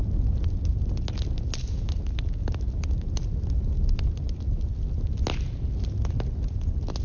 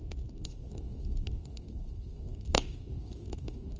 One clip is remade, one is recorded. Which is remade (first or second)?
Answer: second